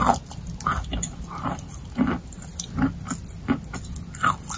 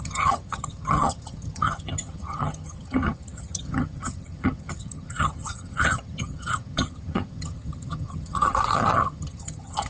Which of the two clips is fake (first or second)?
second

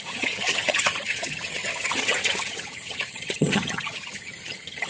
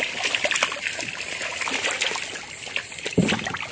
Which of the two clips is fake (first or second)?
first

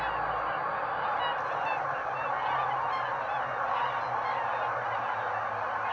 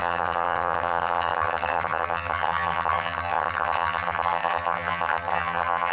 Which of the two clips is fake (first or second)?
second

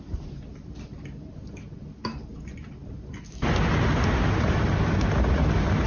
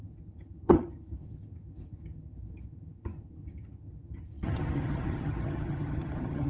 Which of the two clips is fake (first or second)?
second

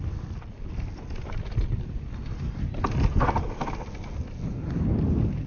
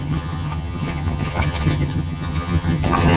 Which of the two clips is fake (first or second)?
second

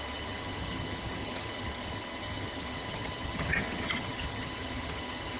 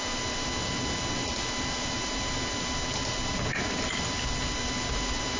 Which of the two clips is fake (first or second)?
first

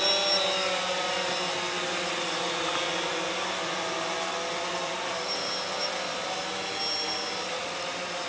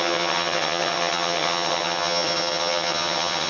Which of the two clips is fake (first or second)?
second